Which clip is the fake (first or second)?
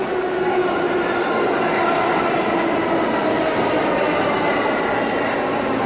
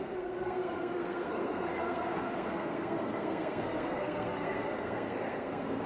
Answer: second